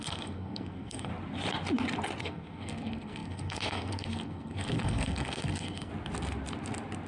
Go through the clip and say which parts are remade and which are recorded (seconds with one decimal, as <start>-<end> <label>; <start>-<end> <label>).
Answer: 0.0-1.1 remade; 1.1-2.2 recorded; 2.2-5.9 remade; 5.9-7.1 recorded